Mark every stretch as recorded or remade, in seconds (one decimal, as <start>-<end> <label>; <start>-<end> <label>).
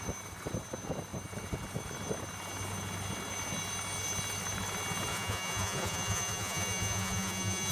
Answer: 0.0-5.1 recorded; 5.1-7.7 remade